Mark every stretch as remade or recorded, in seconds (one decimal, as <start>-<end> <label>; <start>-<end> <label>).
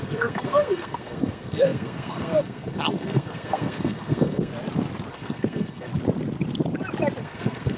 0.0-4.5 remade; 4.5-5.1 recorded; 5.1-5.9 remade; 5.9-7.2 recorded; 7.2-7.8 remade